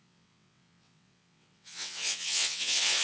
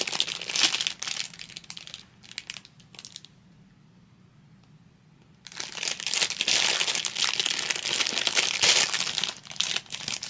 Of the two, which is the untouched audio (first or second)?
second